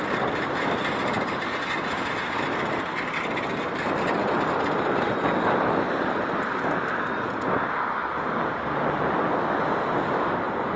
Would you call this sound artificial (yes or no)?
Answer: no